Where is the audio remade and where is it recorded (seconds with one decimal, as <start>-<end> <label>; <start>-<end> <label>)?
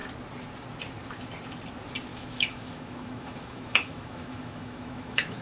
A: 0.0-2.1 recorded; 2.1-5.4 remade